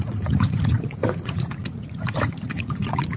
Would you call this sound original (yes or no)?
no